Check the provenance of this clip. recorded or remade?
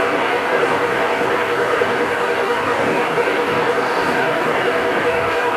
remade